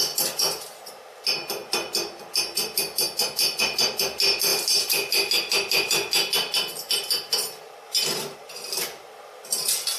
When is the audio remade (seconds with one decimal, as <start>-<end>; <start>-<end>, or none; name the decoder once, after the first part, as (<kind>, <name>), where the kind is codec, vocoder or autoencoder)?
none